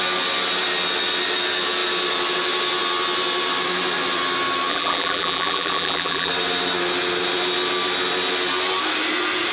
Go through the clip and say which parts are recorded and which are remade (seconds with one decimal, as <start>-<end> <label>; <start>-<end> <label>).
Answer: 0.0-4.7 recorded; 4.7-6.3 remade; 6.3-9.5 recorded